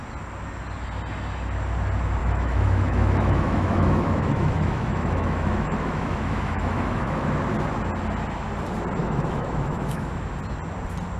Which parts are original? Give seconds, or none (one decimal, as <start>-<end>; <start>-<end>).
0.0-2.2; 7.3-9.0; 10.2-11.2